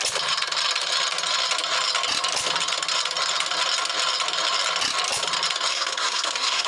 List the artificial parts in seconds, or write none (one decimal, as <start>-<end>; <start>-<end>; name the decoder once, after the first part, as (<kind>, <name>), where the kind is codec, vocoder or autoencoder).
5.7-6.7 (codec, SNAC)